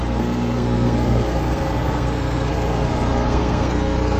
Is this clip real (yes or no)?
no